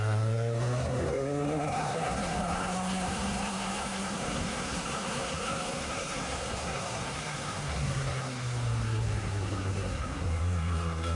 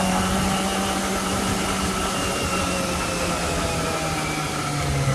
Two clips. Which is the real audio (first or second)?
second